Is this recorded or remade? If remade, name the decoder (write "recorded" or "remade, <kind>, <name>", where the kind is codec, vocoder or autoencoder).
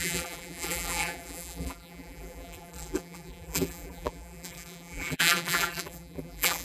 remade, vocoder, BigVGAN v2